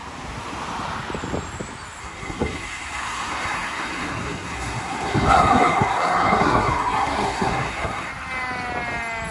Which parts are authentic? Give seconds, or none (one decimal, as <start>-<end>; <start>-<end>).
0.0-2.0; 8.1-9.3